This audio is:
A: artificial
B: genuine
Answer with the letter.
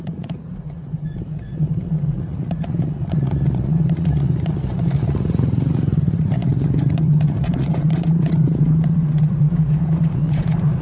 A